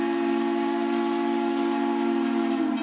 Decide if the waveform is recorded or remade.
recorded